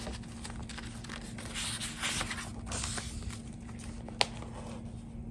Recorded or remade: recorded